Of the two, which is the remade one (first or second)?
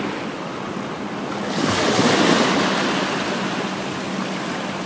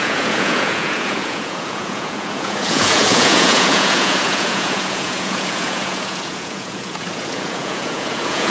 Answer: second